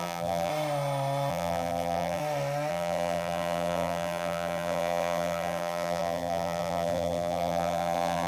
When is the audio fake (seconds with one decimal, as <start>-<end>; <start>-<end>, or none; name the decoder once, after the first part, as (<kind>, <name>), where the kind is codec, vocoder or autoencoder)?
0.0-0.5 (vocoder, BigVGAN v2); 1.3-2.2; 2.7-8.3